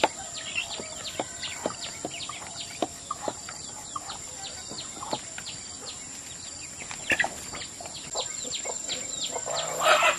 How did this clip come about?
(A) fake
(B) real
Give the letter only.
B